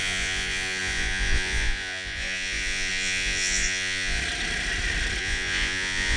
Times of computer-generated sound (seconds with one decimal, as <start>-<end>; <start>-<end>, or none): 0.0-4.2; 5.2-6.2